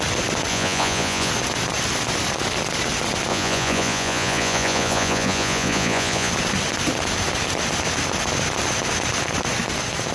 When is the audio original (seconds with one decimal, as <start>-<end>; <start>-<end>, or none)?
0.0-0.5; 1.3-3.3; 6.3-10.1